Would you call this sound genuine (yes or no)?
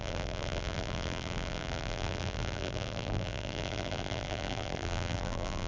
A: no